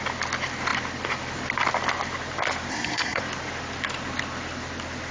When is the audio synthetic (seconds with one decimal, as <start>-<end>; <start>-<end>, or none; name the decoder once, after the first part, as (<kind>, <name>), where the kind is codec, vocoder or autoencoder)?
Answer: 2.7-3.2 (codec, SNAC)